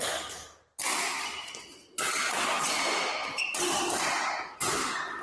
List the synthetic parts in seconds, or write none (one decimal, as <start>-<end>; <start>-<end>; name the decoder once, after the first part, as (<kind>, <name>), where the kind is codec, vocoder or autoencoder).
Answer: 0.9-2.2 (vocoder, BigVGAN v2); 3.2-4.0